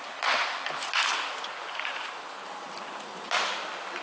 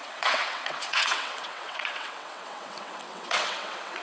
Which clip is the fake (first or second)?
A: second